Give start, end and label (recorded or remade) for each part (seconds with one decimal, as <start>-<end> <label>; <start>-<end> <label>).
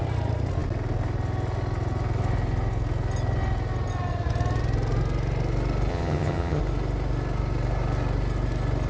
0.0-5.9 recorded; 5.9-6.6 remade; 6.6-8.9 recorded